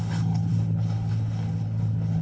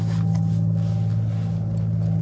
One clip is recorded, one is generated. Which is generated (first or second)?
first